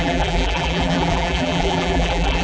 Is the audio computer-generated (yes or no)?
yes